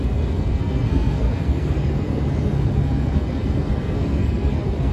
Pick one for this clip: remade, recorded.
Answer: remade